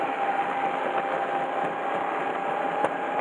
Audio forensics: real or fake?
real